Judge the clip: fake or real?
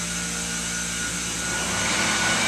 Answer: real